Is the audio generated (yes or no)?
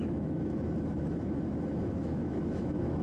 yes